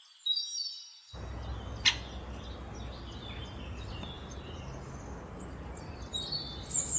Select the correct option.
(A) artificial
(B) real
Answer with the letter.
B